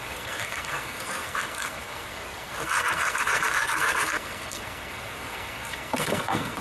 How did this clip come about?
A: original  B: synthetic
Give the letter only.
B